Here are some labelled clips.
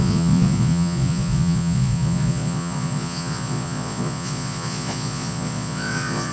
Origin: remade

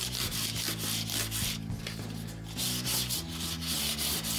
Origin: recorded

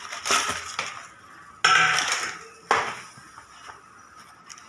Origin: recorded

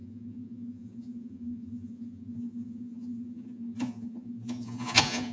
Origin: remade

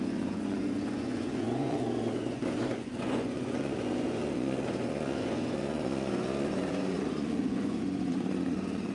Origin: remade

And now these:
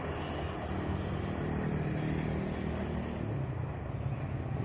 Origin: recorded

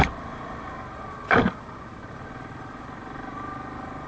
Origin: recorded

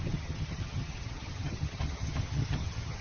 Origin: remade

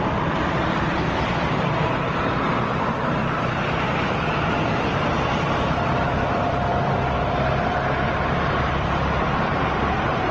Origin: remade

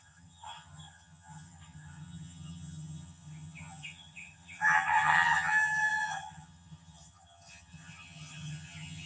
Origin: remade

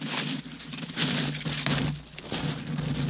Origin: recorded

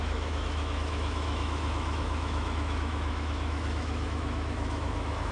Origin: remade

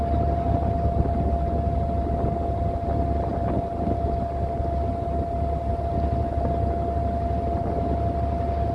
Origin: recorded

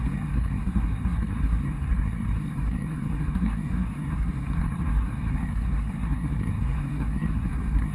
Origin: remade